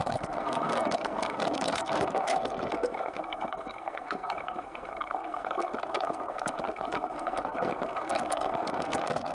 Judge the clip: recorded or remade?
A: remade